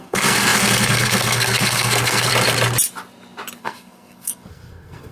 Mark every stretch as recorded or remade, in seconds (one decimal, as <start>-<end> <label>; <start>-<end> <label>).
0.0-2.3 remade; 2.3-3.6 recorded; 3.6-5.1 remade